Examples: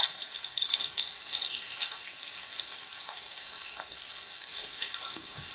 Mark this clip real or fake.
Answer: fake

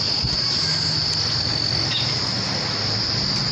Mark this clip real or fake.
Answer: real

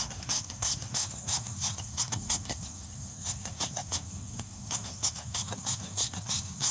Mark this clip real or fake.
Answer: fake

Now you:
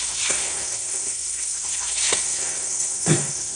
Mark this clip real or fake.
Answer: fake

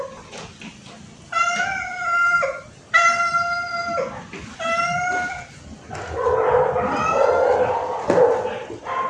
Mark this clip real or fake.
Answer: real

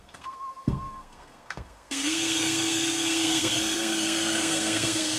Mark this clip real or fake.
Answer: fake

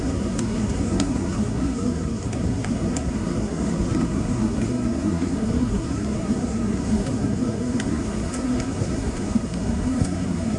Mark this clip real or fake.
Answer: fake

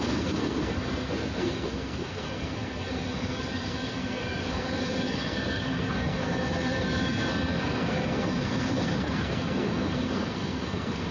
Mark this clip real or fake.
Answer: fake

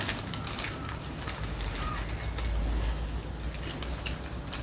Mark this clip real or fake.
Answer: real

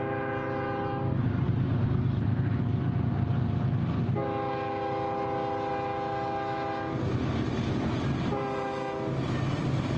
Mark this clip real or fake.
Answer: real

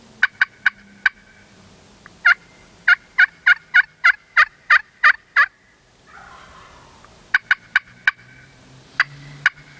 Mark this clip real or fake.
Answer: real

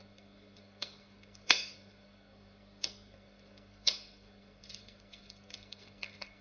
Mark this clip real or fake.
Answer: fake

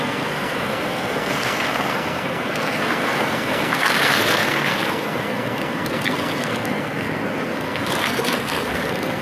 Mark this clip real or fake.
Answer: fake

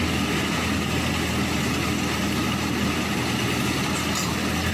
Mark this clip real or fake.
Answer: real